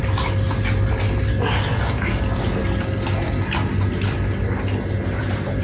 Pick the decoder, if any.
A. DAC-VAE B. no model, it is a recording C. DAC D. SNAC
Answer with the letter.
B